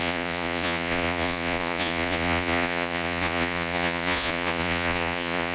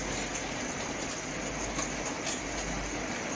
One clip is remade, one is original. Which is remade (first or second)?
first